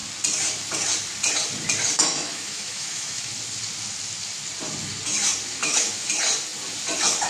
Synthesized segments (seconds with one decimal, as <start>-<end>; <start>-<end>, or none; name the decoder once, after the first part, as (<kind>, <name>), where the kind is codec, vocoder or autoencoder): 2.0-3.3 (autoencoder, DAC-VAE); 5.6-6.1